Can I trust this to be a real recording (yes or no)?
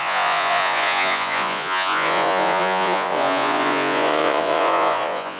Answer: no